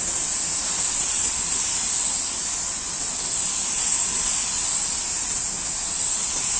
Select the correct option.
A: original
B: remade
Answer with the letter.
A